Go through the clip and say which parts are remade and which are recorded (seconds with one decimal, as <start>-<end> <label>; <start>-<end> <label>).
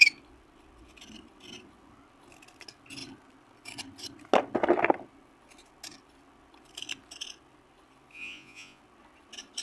0.0-8.1 recorded; 8.1-8.8 remade; 8.8-9.6 recorded